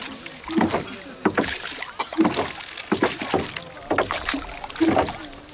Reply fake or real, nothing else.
real